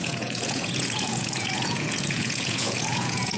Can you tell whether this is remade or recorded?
remade